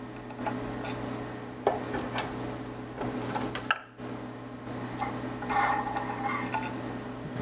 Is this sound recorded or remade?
recorded